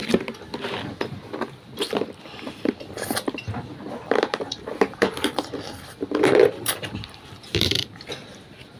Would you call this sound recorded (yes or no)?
no